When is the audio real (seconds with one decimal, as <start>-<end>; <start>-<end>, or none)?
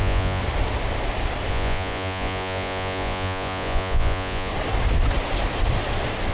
0.4-1.5; 4.5-6.3